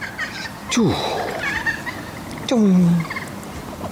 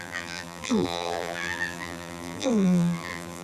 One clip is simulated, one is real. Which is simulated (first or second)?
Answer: second